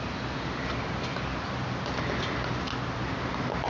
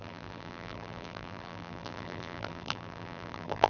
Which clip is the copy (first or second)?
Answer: second